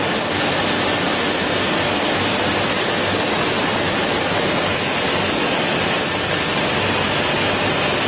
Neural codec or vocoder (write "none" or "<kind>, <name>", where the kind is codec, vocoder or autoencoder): none